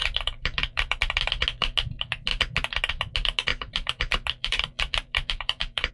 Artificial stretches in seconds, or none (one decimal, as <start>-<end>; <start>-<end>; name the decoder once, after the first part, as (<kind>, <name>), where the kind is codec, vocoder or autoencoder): 0.0-1.0 (vocoder, BigVGAN v2); 3.5-5.9